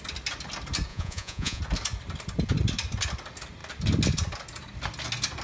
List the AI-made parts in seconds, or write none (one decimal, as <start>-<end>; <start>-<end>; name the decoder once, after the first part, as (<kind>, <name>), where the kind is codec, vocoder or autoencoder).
0.9-1.6 (vocoder, Vocos)